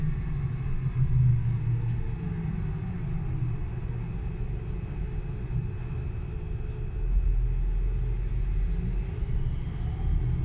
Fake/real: real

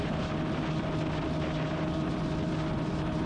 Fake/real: real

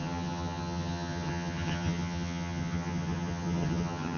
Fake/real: fake